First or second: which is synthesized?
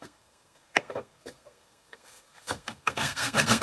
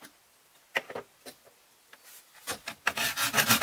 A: first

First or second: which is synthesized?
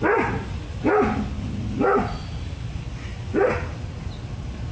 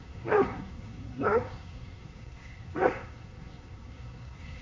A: second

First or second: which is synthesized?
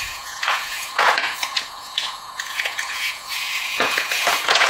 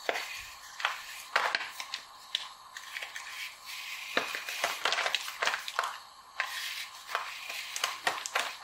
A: first